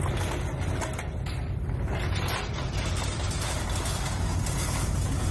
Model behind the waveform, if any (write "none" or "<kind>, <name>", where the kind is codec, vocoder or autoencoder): none